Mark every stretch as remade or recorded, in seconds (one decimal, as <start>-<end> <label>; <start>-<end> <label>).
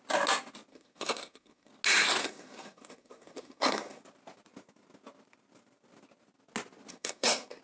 0.0-0.7 recorded; 0.7-1.7 remade; 1.7-2.2 recorded; 2.2-4.0 remade; 4.0-6.9 recorded; 6.9-7.6 remade